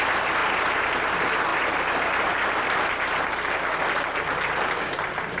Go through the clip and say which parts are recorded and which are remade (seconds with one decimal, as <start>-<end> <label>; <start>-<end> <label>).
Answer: 0.0-5.4 recorded